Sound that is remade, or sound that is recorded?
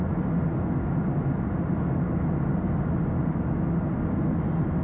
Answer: recorded